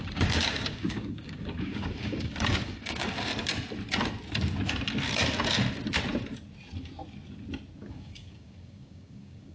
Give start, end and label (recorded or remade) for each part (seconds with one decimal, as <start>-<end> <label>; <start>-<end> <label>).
0.0-3.3 remade; 3.3-7.8 recorded; 7.8-9.5 remade